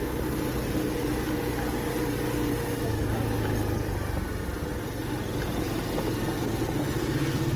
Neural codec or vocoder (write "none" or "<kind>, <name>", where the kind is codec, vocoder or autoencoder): none